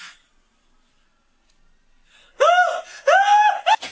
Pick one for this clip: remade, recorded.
recorded